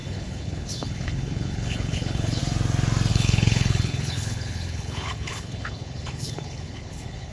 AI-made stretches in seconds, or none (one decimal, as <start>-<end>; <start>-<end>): 0.0-2.4; 3.1-7.3